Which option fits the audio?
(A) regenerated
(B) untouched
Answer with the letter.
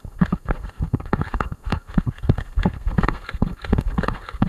A